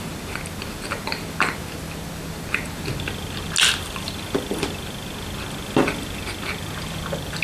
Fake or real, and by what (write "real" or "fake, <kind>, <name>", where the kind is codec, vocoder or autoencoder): real